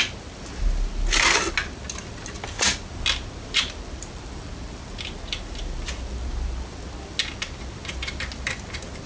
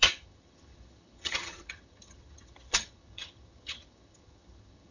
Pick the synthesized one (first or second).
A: second